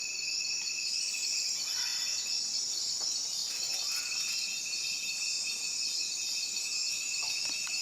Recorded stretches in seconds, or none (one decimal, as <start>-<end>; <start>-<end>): 0.0-7.8